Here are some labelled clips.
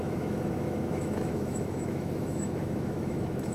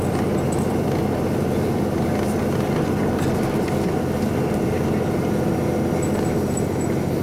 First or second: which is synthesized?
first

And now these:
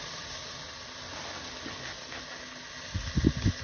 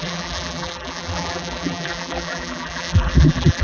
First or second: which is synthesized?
second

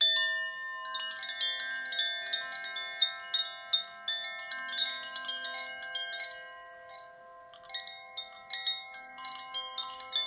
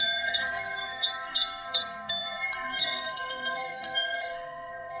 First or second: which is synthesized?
second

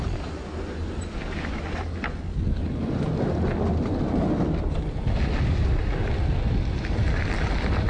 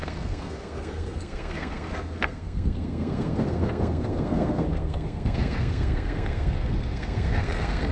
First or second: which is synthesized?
second